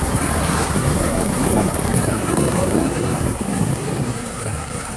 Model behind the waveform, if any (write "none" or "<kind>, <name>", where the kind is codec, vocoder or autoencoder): codec, SNAC